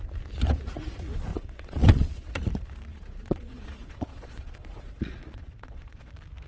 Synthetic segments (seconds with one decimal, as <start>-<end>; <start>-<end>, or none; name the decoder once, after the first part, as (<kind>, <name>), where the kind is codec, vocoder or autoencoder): 1.3-2.5 (vocoder, Vocos); 2.9-6.1